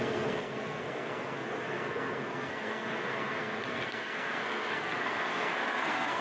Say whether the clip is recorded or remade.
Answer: remade